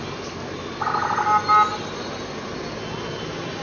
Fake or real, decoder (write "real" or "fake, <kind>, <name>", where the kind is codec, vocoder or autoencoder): real